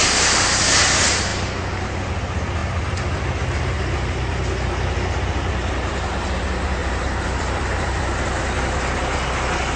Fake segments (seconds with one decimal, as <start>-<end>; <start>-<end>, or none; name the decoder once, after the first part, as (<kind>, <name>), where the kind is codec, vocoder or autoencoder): 6.8-8.2 (vocoder, BigVGAN v2)